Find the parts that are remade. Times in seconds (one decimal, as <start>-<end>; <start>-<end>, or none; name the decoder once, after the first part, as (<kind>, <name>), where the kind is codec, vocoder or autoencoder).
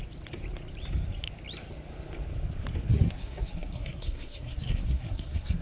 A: 2.9-5.6 (codec, SNAC)